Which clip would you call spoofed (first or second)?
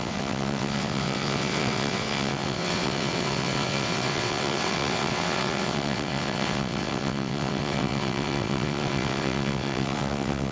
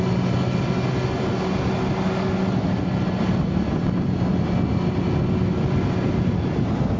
first